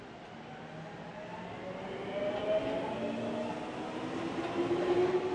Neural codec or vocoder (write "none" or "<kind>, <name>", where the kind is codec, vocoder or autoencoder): none